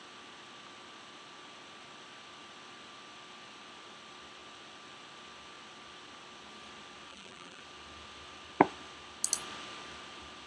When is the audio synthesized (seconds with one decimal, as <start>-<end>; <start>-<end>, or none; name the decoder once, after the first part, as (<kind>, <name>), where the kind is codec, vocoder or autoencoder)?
7.1-7.6 (vocoder, BigVGAN v2)